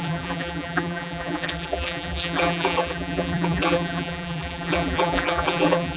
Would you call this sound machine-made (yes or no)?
yes